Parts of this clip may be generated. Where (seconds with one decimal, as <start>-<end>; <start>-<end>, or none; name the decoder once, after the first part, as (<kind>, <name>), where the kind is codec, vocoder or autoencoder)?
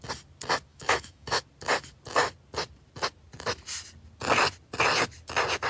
0.7-1.4 (autoencoder, DAC-VAE)